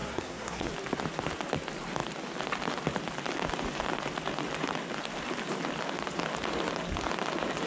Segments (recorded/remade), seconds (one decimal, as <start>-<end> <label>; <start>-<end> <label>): 0.0-0.7 remade; 0.7-7.7 recorded